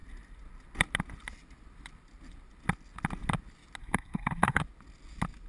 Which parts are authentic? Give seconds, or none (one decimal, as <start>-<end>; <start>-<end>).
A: 0.0-3.8; 4.6-5.5